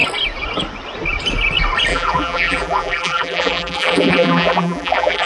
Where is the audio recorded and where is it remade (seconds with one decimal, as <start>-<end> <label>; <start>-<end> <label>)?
0.0-1.9 recorded; 1.9-5.3 remade